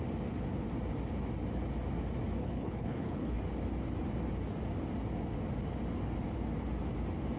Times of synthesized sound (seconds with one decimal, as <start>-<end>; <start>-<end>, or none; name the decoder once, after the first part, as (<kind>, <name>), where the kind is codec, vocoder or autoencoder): 2.4-3.4 (codec, HILCodec)